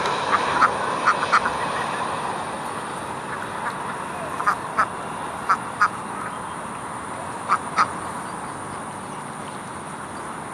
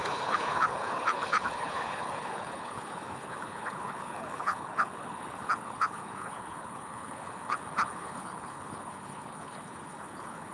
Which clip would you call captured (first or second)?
first